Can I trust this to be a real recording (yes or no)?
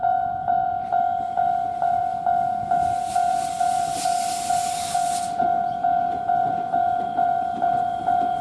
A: no